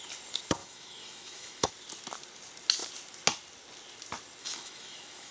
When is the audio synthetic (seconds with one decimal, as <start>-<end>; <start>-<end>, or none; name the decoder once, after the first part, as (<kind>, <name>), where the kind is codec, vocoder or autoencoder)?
0.6-1.7 (autoencoder, DAC-VAE); 4.4-5.3